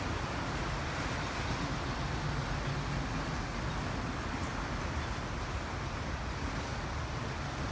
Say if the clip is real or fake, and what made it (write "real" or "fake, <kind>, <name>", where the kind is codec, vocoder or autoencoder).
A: real